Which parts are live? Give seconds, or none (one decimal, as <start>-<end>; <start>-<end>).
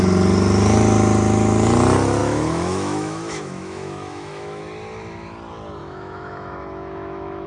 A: 0.0-2.2; 4.6-5.8